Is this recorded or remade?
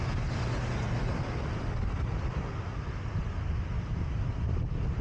recorded